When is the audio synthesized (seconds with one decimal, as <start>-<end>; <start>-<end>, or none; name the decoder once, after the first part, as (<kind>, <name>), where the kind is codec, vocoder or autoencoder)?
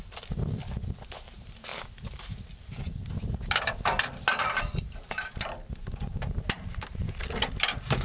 none